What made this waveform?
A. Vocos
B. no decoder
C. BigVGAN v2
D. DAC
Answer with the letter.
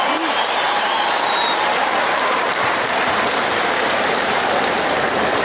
C